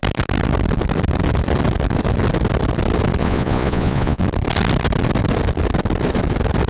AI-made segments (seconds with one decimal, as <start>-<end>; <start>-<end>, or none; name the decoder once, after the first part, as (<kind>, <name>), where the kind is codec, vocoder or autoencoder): 3.2-4.2 (vocoder, Vocos)